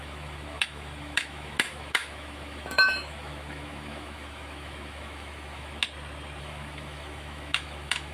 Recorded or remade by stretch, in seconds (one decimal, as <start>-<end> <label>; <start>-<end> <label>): 0.0-5.8 remade; 5.8-6.4 recorded; 6.4-8.1 remade